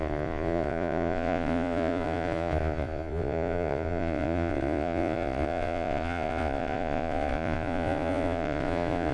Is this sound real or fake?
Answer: fake